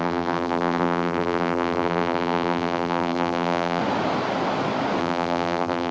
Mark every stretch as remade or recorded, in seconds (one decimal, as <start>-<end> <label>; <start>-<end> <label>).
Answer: 0.0-3.8 remade; 3.8-5.0 recorded; 5.0-5.9 remade